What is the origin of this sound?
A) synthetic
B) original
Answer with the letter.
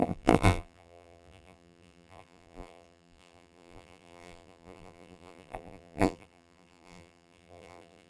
A